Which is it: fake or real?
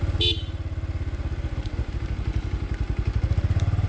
real